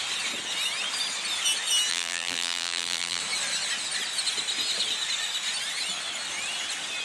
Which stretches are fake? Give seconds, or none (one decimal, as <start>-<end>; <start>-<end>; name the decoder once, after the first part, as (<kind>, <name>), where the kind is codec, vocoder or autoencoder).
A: 1.9-3.2 (vocoder, BigVGAN v2)